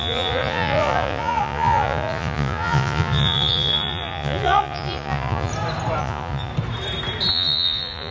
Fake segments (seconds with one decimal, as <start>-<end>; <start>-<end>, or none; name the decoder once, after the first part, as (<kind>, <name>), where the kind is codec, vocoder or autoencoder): 0.0-5.5 (vocoder, Vocos); 6.0-6.5; 7.3-8.1